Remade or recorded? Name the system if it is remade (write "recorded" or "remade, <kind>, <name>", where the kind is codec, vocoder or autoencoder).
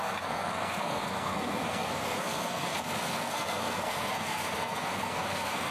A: remade, codec, SNAC